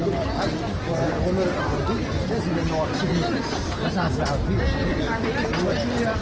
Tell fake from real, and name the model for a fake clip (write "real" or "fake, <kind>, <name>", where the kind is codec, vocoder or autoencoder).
real